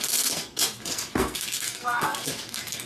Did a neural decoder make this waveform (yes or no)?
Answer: yes